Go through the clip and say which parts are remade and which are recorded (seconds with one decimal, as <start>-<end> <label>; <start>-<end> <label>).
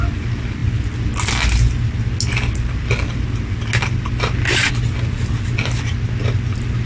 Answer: 0.0-6.9 recorded